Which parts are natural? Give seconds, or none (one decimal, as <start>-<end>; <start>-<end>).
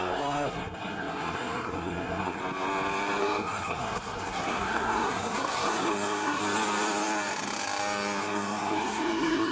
2.4-3.2; 6.4-8.2